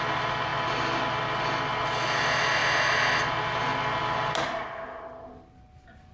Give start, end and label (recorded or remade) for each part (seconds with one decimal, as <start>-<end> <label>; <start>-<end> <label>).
0.0-6.1 recorded